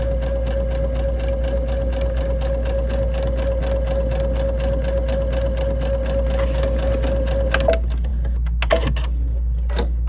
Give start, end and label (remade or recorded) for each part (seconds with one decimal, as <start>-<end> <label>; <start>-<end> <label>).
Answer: 0.0-10.1 recorded